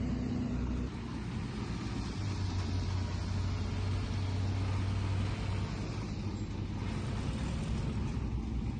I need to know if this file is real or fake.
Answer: real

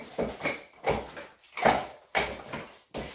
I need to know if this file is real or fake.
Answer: real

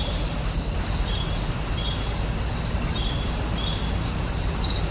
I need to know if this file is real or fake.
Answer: real